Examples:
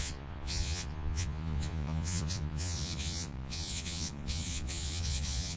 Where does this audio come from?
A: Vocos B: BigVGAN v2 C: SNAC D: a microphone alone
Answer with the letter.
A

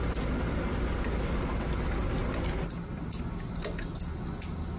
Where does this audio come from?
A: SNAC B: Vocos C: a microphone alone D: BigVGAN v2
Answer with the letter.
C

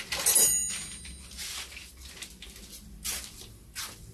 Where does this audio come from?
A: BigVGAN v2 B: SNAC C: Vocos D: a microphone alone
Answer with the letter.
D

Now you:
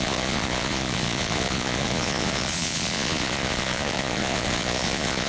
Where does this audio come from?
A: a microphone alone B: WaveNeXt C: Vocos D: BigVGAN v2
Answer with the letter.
C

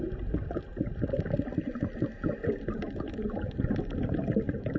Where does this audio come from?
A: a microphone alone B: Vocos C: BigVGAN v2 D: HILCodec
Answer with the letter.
A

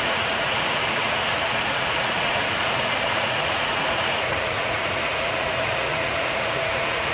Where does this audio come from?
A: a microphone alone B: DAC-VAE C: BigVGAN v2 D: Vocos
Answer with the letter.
D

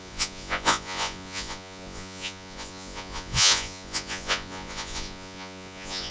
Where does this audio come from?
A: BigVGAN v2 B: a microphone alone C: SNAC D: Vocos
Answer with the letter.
D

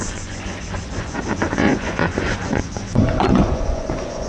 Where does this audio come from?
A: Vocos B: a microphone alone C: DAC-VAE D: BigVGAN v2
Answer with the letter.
A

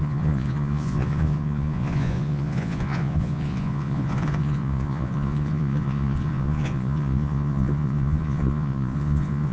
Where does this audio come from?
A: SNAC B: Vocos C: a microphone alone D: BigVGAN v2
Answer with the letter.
B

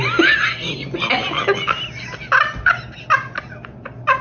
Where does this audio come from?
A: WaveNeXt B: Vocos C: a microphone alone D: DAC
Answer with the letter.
C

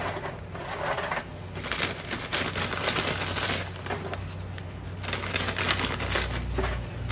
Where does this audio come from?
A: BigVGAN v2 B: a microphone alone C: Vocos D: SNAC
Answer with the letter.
B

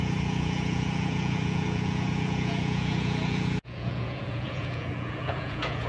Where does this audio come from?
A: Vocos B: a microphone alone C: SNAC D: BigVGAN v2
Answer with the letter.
A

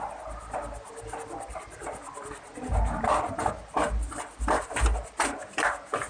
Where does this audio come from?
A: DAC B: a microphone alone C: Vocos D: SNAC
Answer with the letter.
B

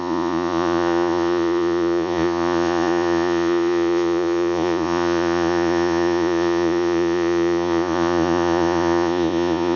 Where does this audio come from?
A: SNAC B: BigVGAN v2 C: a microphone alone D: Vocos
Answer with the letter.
D